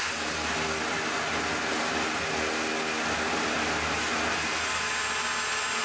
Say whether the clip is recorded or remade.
recorded